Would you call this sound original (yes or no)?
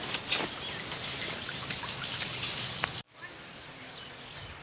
yes